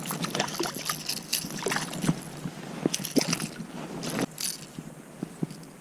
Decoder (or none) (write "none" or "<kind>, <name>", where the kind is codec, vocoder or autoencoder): none